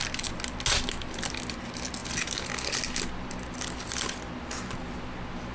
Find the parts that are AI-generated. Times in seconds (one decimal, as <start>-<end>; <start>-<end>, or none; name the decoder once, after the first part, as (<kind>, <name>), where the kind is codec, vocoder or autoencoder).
none